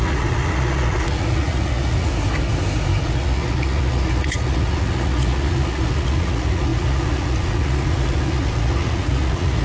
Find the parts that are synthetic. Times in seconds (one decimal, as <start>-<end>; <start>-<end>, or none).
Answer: 0.0-2.1; 3.0-9.6